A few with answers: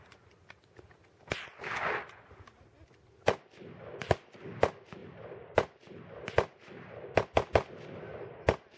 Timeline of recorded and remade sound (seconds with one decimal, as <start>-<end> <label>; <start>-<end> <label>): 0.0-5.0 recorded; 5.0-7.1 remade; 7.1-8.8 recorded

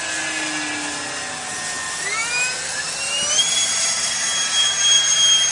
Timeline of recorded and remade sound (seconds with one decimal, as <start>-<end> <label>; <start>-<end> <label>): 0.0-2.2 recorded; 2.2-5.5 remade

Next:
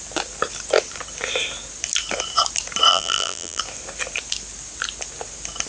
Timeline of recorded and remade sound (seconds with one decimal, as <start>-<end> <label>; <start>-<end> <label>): 0.0-2.9 recorded; 2.9-3.6 remade; 3.6-5.7 recorded

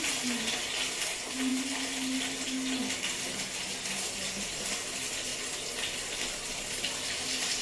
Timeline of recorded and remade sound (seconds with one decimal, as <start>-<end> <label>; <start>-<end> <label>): 0.0-7.6 recorded

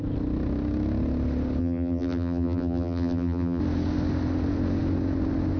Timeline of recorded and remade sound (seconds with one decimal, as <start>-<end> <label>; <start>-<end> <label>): 0.0-1.6 recorded; 1.6-3.6 remade; 3.6-5.6 recorded

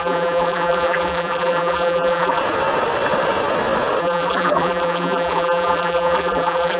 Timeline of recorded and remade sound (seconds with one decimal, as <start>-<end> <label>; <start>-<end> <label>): 0.0-2.4 remade; 2.4-4.0 recorded; 4.0-6.8 remade

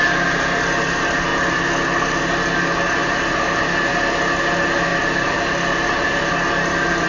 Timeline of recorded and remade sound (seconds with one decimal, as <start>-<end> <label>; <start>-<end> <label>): 0.0-3.0 recorded; 3.0-3.6 remade; 3.6-4.9 recorded; 4.9-6.3 remade; 6.3-7.1 recorded

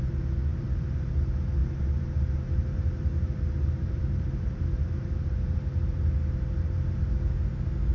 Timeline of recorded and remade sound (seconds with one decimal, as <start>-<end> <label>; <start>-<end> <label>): 0.0-0.5 recorded; 0.5-1.1 remade; 1.1-1.6 recorded; 1.6-6.0 remade; 6.0-7.9 recorded